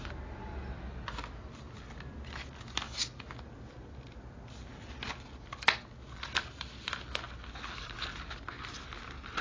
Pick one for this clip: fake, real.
real